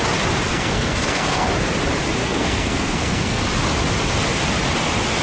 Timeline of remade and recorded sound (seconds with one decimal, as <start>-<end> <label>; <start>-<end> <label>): 0.0-0.5 recorded; 0.5-1.5 remade; 1.5-2.2 recorded; 2.2-3.4 remade; 3.4-5.2 recorded